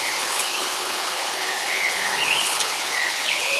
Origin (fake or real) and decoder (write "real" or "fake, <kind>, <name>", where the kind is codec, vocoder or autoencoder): fake, codec, HILCodec